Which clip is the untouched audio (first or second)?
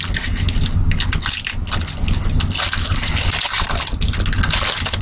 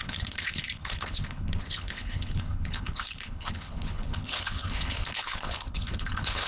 first